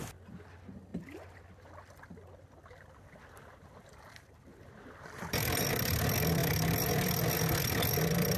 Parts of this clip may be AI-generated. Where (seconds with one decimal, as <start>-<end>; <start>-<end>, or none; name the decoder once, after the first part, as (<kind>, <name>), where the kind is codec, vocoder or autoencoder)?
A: none